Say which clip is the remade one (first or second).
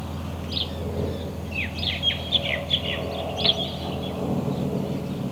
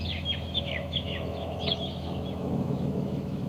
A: second